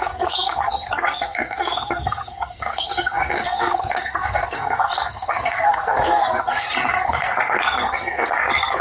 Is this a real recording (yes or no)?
no